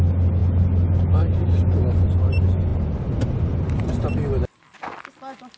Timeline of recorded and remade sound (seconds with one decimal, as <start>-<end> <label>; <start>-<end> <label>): 0.0-5.6 recorded